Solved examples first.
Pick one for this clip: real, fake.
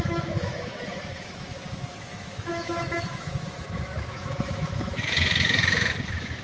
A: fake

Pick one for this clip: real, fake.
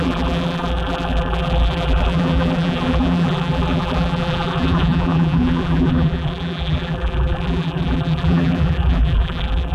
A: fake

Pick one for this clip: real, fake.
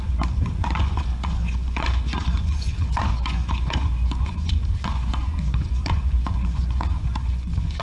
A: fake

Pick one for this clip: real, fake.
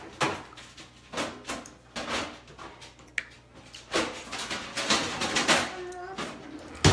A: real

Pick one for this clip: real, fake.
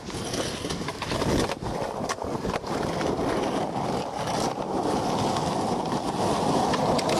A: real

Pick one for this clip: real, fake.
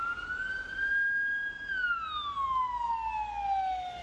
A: real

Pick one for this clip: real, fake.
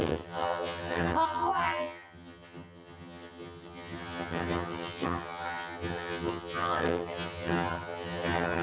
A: fake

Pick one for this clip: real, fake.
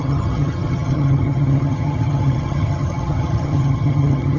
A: fake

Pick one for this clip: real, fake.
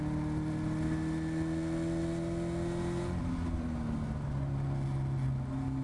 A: real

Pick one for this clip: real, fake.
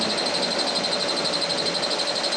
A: real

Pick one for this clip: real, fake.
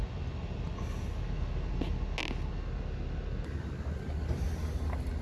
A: real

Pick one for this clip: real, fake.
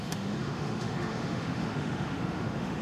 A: fake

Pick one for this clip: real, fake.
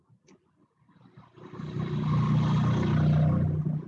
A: real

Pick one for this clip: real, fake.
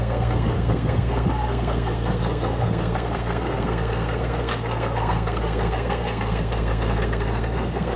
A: fake